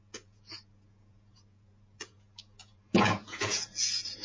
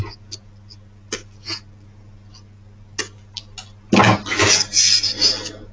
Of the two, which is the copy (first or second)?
first